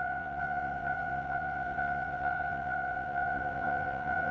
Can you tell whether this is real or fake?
fake